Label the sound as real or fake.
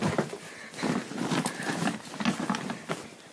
real